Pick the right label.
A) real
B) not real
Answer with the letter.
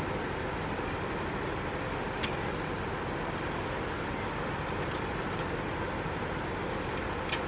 A